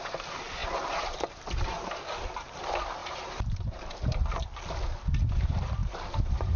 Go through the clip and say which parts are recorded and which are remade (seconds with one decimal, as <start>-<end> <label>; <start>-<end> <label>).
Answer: 0.0-3.0 recorded; 3.0-4.1 remade; 4.1-6.6 recorded